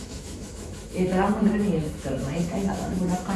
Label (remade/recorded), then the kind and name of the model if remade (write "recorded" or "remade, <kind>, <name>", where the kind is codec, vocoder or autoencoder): remade, autoencoder, DAC-VAE